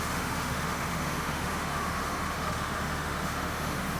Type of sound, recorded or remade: remade